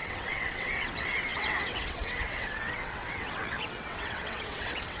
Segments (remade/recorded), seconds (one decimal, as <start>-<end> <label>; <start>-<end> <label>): 0.0-5.0 remade